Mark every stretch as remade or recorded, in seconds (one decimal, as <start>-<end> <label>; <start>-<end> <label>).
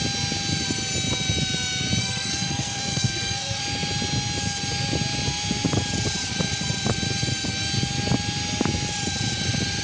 0.0-2.0 recorded; 2.0-3.6 remade; 3.6-9.8 recorded